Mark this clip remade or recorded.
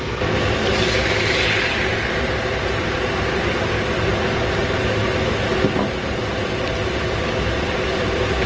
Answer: recorded